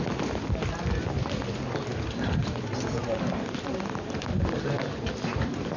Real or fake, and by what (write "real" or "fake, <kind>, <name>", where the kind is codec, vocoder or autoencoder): real